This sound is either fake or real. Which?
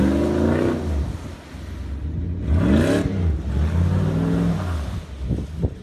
real